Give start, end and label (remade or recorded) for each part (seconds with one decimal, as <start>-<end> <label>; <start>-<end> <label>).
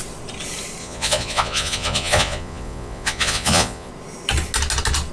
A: 0.0-0.8 recorded; 0.8-3.9 remade; 3.9-5.1 recorded